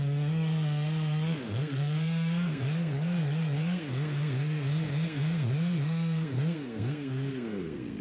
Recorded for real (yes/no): no